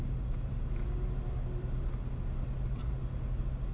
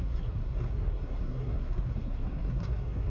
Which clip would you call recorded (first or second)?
first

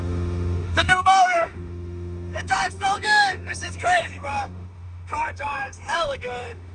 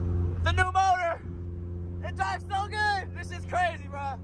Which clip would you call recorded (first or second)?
second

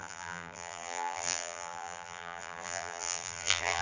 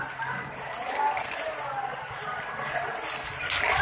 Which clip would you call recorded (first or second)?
second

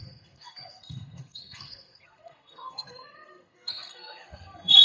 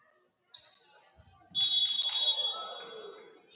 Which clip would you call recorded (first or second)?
second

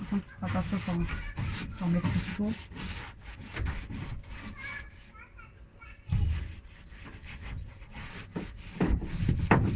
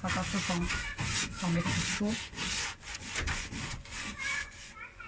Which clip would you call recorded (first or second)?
first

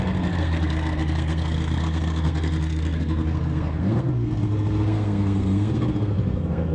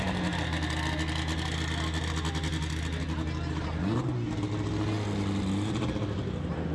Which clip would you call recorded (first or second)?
second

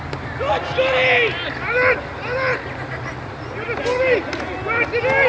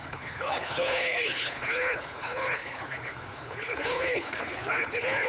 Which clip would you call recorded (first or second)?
first